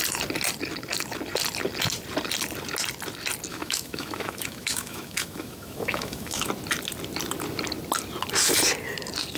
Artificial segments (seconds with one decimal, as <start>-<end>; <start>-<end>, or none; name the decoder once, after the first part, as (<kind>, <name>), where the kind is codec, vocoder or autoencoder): 3.5-6.5 (autoencoder, DAC-VAE)